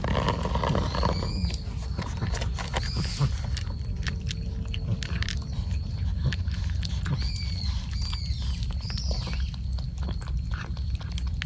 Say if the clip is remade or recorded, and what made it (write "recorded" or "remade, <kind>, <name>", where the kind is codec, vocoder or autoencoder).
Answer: recorded